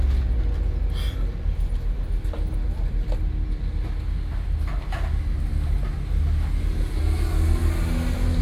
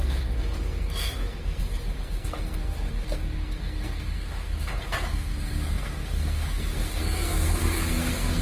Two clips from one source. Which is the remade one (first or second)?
second